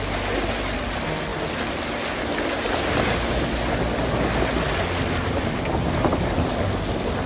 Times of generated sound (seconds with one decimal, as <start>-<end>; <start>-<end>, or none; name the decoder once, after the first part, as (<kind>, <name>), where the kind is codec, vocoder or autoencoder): none